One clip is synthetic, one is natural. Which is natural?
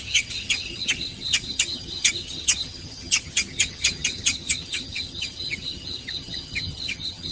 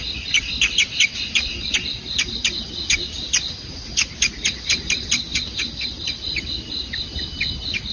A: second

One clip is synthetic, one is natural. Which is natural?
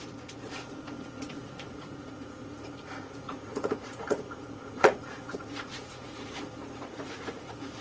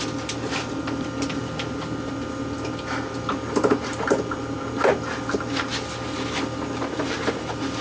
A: second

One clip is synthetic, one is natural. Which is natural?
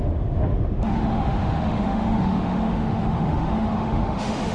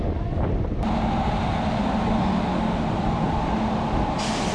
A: second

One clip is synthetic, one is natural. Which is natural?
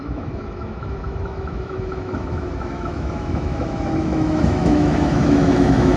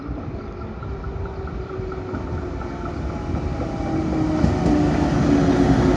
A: second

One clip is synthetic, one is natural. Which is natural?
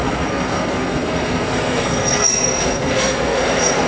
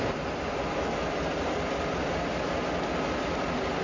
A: second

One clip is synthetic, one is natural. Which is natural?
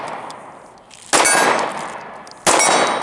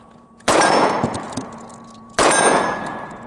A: first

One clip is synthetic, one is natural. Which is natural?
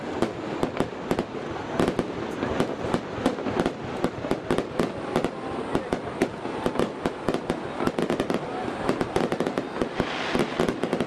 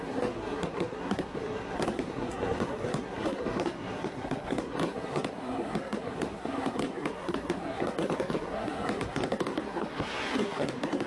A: first